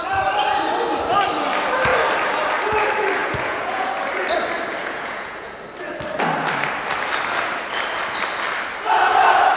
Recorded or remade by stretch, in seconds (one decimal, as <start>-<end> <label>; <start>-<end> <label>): 0.0-3.2 recorded; 3.2-3.9 remade; 3.9-4.8 recorded; 4.8-5.5 remade; 5.5-9.6 recorded